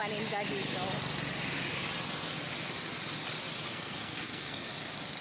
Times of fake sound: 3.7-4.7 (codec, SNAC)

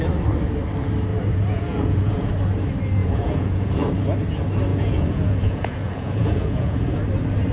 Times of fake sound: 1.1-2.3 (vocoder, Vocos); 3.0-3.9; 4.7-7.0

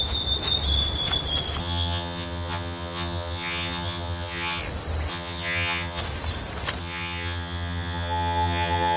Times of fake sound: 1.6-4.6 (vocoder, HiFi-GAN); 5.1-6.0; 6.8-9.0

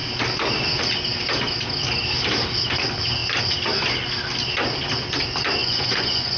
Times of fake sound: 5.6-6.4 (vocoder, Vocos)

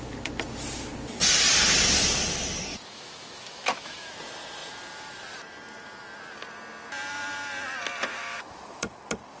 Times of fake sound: 2.7-4.1 (autoencoder, DAC-VAE); 8.1-8.6